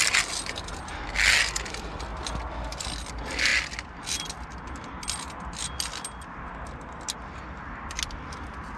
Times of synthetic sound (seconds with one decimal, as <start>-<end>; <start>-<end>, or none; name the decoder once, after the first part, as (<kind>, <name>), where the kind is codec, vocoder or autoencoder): none